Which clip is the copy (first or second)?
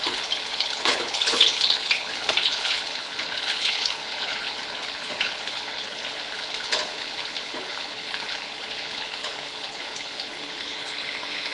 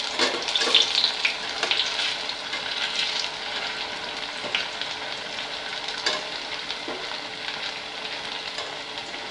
first